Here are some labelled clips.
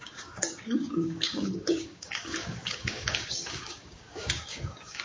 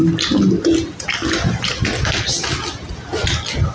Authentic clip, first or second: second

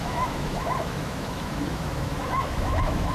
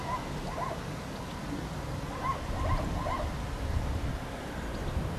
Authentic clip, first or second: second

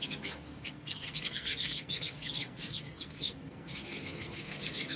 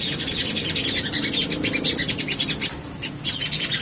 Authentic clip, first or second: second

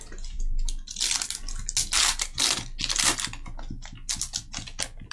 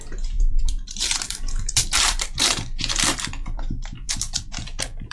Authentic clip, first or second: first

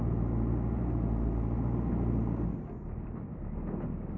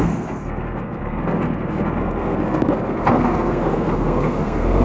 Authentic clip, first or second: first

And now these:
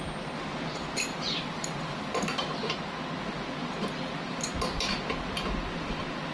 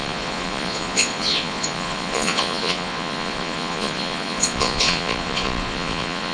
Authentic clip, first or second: first